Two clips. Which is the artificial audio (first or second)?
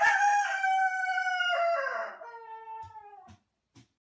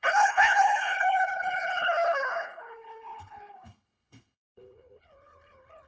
second